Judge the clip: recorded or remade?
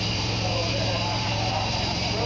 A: remade